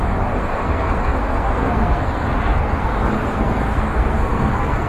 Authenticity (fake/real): fake